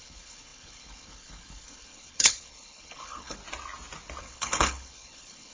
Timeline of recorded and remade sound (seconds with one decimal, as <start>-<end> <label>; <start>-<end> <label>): 0.0-3.4 remade; 3.4-4.2 recorded; 4.2-5.5 remade